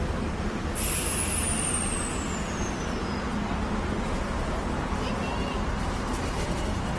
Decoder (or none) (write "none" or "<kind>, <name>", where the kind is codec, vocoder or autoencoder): none